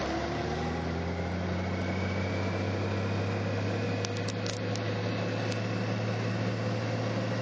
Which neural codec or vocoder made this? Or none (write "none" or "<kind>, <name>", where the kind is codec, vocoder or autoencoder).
none